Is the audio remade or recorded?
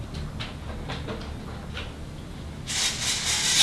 recorded